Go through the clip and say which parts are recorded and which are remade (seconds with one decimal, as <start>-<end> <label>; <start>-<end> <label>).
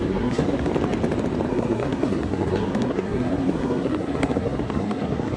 0.0-0.7 remade; 0.7-1.5 recorded; 1.5-5.4 remade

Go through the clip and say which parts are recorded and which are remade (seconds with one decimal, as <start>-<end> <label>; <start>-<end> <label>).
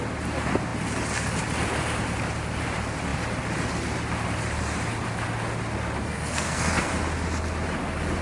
0.0-6.0 recorded; 6.0-6.9 remade; 6.9-8.2 recorded